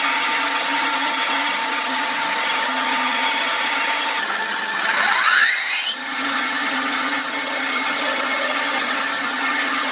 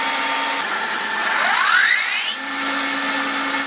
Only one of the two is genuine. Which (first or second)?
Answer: second